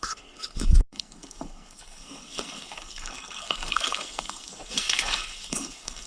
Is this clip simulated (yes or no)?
yes